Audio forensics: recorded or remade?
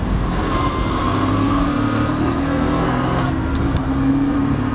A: remade